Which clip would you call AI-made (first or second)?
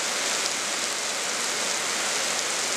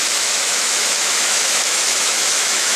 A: second